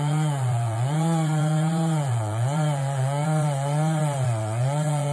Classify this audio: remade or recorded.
remade